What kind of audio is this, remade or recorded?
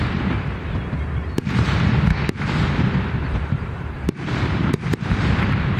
remade